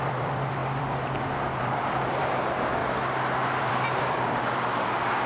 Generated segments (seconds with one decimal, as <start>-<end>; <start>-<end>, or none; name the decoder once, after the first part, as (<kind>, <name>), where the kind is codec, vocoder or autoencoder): 0.0-2.8 (vocoder, BigVGAN v2); 3.6-5.3